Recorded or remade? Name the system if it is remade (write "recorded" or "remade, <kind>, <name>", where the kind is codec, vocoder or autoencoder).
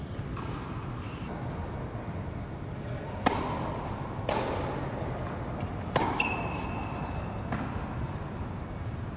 recorded